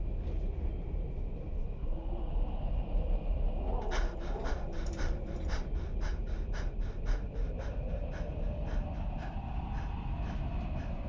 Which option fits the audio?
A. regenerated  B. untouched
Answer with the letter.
B